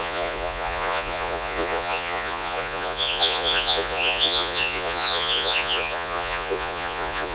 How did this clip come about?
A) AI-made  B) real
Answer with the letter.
A